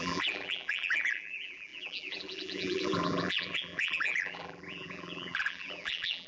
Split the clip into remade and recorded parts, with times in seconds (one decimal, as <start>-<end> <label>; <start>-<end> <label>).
0.0-6.3 remade